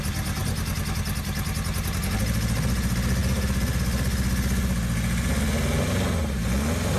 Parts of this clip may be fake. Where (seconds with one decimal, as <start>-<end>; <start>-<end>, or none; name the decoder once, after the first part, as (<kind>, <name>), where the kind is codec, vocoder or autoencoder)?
none